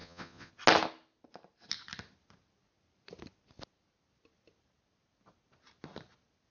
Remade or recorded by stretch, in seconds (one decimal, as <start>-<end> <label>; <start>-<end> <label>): 0.0-0.5 remade; 0.5-6.5 recorded